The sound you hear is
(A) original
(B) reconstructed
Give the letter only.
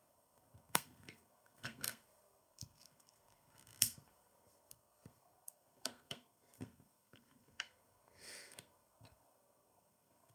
B